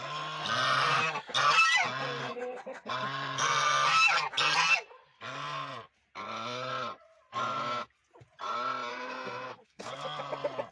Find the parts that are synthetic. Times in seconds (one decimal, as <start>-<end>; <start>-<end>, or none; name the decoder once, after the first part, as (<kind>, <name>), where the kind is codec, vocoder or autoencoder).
2.2-2.9 (codec, SNAC); 8.9-9.9